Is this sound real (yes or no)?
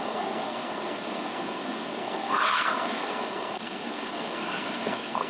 no